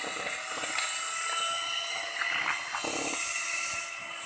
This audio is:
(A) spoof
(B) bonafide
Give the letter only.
B